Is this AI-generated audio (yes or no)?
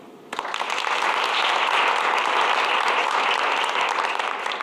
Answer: no